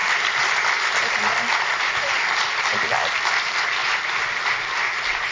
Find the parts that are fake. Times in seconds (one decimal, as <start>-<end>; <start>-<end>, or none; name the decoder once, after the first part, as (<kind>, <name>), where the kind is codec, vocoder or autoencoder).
none